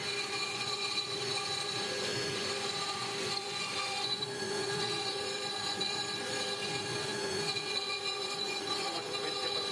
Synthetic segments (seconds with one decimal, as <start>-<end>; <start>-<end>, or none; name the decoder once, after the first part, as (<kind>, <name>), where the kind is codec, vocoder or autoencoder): 0.0-9.7 (vocoder, Vocos)